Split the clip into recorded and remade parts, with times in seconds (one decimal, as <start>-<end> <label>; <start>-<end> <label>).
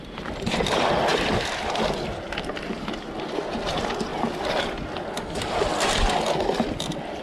0.0-7.2 recorded